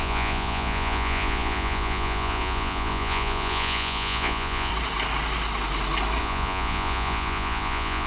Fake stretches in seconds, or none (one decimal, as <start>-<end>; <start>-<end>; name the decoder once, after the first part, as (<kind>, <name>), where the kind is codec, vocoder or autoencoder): 0.0-4.7 (vocoder, Vocos); 6.2-8.1